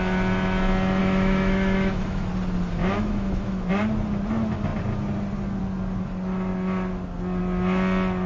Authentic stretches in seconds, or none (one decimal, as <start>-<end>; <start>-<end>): 0.0-1.0; 2.3-2.8; 3.7-8.3